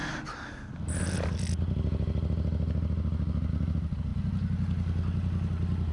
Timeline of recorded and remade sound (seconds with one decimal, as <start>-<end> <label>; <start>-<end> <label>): 0.0-5.9 recorded